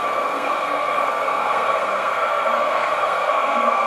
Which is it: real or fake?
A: fake